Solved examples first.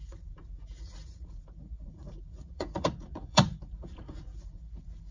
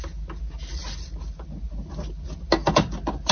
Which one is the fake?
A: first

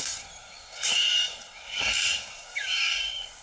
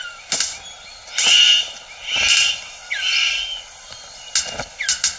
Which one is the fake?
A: first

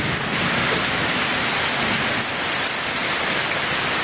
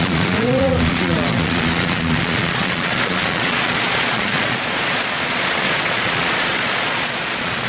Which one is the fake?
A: second